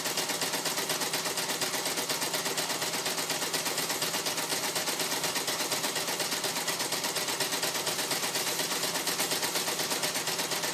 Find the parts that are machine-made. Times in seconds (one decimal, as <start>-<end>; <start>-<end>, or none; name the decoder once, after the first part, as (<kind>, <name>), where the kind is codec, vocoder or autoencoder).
4.5-7.6 (vocoder, BigVGAN v2)